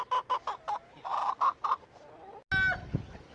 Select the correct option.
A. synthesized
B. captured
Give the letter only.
B